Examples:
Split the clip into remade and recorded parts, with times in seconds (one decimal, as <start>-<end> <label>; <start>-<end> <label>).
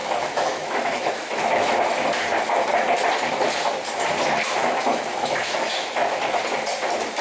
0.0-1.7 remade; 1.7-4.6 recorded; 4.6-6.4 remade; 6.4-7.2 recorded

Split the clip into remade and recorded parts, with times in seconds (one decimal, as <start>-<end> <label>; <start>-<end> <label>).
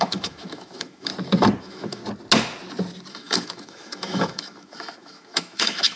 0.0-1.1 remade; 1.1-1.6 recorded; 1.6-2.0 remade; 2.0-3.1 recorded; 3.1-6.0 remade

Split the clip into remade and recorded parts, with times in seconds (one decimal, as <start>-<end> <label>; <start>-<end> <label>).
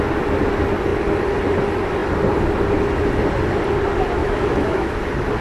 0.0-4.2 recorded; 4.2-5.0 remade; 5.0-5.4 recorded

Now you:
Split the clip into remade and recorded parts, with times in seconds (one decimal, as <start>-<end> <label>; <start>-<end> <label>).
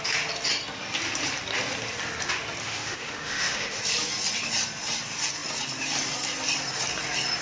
0.0-2.6 recorded; 2.6-3.8 remade; 3.8-7.4 recorded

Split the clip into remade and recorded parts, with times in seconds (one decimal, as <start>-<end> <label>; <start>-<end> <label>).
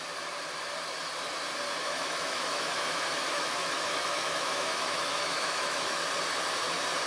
0.0-1.8 recorded; 1.8-6.0 remade; 6.0-7.1 recorded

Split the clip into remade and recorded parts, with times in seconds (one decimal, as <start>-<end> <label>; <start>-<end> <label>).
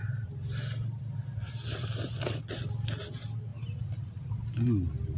0.0-5.2 recorded